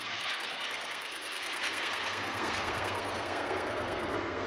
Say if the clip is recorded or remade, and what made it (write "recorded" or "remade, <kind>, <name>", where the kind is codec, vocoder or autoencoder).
remade, codec, SNAC